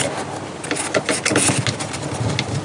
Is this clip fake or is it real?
real